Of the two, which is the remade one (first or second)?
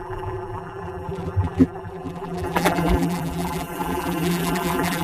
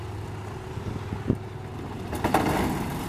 first